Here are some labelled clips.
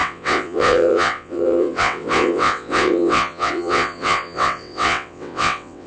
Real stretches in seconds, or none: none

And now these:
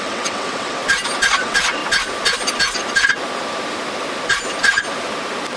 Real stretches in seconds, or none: 0.8-1.4; 1.8-5.6

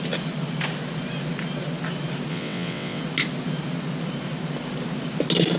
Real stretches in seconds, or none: 0.0-2.3; 3.0-5.6

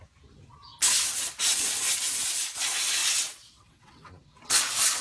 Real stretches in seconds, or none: 0.0-3.0; 4.1-5.0

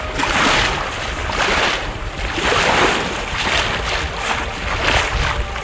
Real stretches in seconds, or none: 0.0-5.6